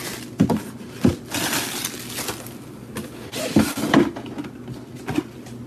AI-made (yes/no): no